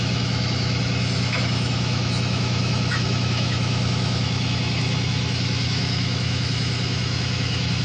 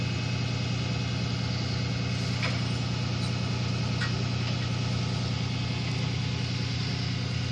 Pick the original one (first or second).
second